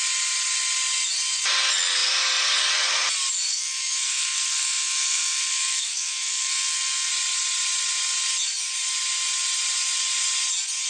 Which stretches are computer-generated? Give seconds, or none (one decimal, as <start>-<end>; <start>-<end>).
3.5-7.1